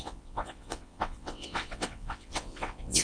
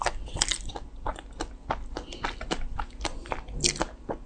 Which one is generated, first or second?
first